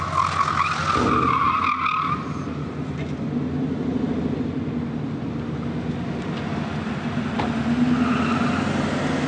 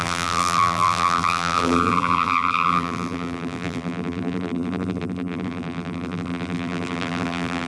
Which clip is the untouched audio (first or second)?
first